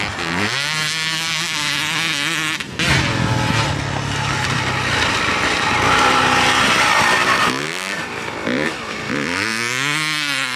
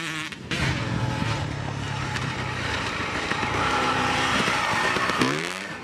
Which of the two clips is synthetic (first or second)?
second